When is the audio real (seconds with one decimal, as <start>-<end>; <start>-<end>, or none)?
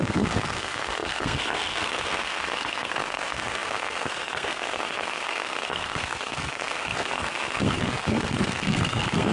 none